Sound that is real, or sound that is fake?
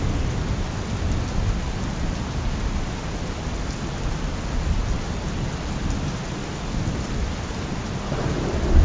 real